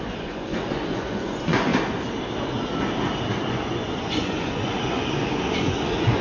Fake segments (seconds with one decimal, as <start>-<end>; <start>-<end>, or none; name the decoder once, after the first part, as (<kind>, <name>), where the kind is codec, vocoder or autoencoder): 0.0-1.7 (vocoder, Vocos); 3.5-6.2